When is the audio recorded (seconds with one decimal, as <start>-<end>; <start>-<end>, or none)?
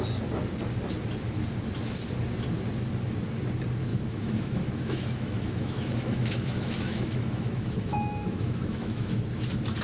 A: 0.0-3.9; 9.2-9.8